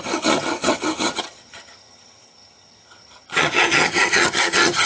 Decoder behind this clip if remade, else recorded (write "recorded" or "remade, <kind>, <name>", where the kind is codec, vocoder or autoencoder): remade, vocoder, HiFi-GAN